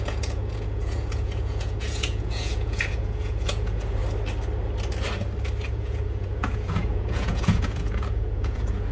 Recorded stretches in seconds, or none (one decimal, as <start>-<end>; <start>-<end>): 4.0-5.7